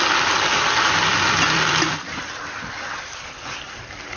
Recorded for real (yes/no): yes